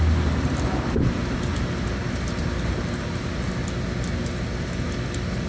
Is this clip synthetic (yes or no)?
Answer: no